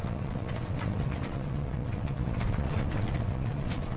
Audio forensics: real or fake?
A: fake